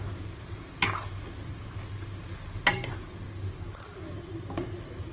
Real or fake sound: real